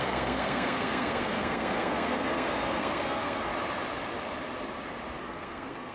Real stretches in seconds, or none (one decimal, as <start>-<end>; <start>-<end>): 3.5-5.2